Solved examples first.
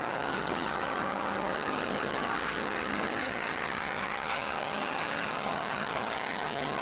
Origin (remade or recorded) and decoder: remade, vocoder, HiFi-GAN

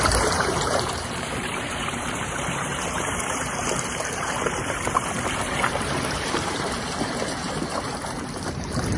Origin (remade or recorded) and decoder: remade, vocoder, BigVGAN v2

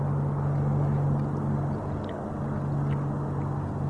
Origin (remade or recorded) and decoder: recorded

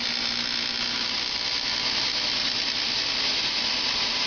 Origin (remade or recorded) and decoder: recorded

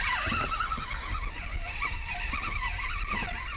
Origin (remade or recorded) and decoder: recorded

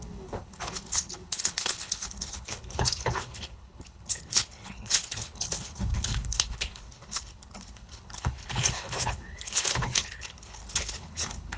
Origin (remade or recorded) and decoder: remade, codec, HILCodec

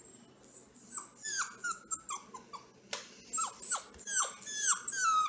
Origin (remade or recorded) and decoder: recorded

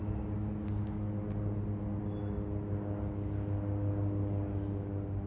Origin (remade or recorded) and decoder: recorded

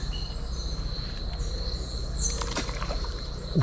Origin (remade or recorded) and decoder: remade, vocoder, BigVGAN v2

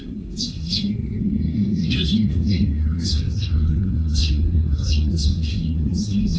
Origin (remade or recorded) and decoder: remade, codec, SNAC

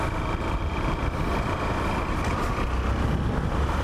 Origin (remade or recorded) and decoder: recorded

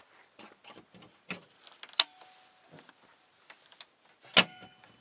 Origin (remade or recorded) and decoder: recorded